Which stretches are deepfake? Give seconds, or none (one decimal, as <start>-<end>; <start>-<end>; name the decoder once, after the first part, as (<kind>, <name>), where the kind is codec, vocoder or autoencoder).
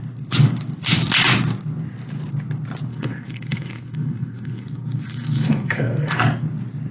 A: 2.9-6.2 (codec, SNAC)